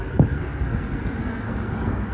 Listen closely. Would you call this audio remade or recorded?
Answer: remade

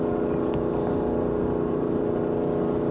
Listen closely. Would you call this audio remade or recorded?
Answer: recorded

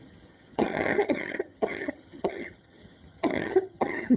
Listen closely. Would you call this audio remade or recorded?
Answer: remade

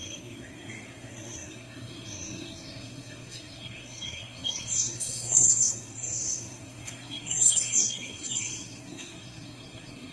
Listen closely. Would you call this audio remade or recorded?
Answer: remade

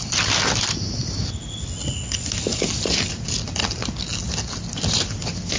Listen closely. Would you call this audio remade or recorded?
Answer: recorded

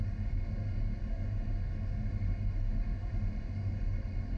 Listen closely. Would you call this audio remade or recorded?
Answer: remade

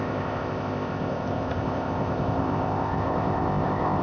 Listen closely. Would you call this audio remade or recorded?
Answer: remade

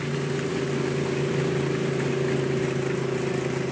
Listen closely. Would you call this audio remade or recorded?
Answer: recorded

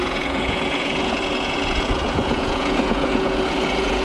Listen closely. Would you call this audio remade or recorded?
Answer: remade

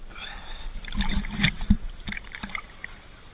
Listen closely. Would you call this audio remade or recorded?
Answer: remade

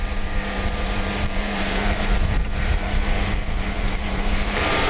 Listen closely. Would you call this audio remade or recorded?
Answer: remade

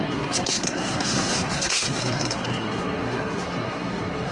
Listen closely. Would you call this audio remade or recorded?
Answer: remade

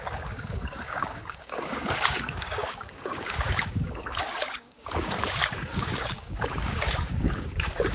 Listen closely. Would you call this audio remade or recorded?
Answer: remade